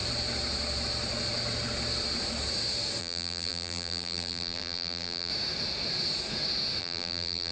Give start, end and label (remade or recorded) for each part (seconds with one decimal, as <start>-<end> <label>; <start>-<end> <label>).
0.0-3.0 recorded; 3.0-5.3 remade; 5.3-6.8 recorded; 6.8-7.5 remade